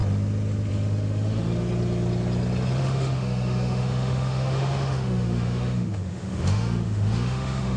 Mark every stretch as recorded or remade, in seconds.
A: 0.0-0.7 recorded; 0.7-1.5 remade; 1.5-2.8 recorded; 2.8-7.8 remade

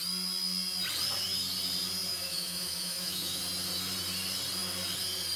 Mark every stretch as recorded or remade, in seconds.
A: 0.0-2.1 recorded; 2.1-3.4 remade; 3.4-5.4 recorded